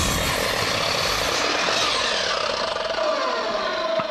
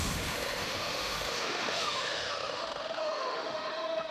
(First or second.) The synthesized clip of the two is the second